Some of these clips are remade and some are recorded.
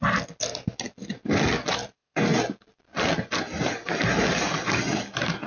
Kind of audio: recorded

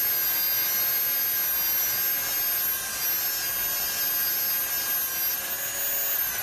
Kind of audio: recorded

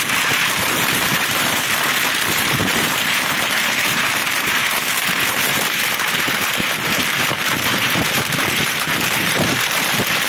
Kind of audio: remade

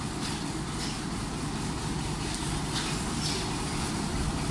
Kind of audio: recorded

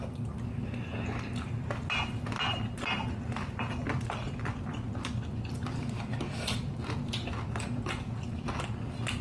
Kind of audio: recorded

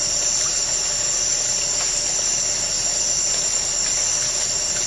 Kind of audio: recorded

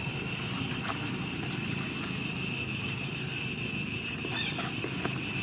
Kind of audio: recorded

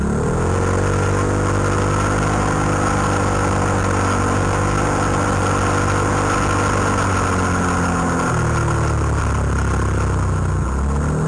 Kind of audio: recorded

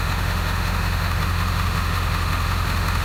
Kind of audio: remade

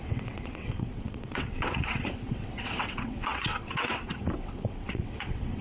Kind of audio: remade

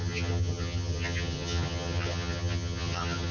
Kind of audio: remade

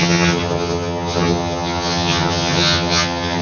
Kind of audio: remade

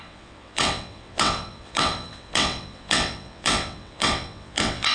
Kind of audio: remade